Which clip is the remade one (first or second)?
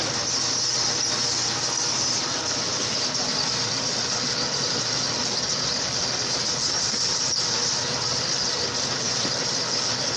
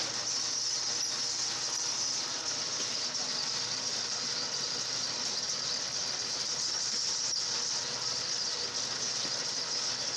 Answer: first